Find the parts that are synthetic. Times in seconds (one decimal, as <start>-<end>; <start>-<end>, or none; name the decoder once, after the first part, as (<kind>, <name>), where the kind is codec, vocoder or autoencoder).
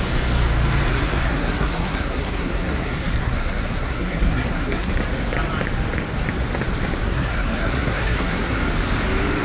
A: 0.9-4.9 (codec, SNAC); 7.0-8.6